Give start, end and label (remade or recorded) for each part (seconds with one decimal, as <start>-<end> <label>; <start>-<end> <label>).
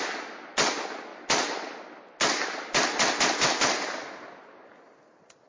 0.0-5.5 recorded